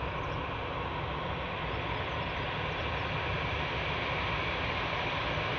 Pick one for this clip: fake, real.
real